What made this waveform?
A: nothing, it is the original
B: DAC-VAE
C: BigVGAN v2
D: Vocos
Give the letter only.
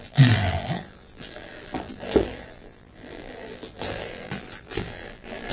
C